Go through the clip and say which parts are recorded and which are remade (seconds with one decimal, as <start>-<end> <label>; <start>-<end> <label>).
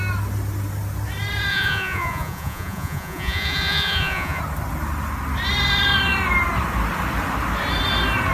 0.0-1.5 recorded; 1.5-4.4 remade; 4.4-8.3 recorded